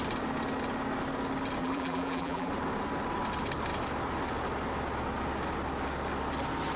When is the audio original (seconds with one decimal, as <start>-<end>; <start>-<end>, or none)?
0.0-1.6; 2.5-6.8